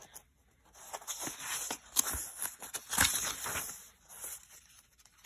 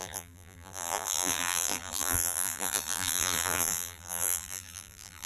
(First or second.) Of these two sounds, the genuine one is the first